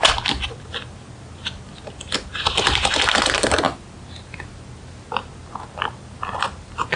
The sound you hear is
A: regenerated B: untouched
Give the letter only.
B